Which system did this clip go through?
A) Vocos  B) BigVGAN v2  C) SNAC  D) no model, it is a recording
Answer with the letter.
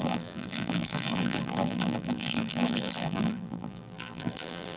B